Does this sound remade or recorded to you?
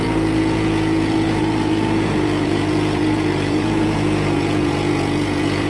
remade